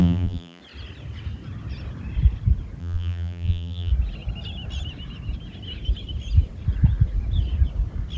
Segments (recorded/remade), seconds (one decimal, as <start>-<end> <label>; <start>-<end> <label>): 0.0-0.6 remade; 0.6-2.8 recorded; 2.8-3.9 remade; 3.9-8.2 recorded